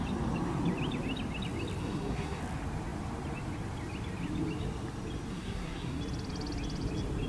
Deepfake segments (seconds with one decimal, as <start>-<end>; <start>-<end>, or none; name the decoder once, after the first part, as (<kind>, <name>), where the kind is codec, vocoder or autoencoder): 1.8-2.4 (codec, SNAC); 5.3-6.0